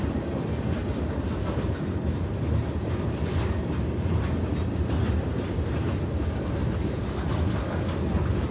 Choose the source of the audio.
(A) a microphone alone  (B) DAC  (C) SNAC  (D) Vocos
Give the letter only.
A